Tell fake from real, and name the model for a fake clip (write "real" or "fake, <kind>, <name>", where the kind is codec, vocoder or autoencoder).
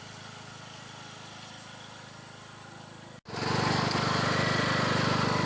real